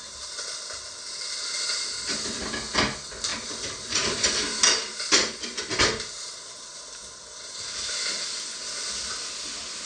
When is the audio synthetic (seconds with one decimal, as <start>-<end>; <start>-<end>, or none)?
none